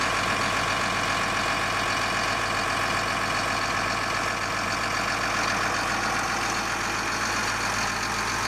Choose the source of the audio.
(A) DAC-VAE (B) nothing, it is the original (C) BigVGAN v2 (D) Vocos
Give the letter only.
B